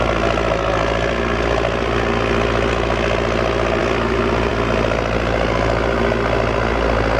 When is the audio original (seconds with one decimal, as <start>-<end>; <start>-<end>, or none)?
0.0-7.2